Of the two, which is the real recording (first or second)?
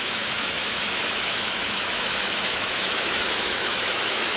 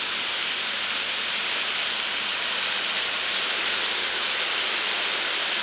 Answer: second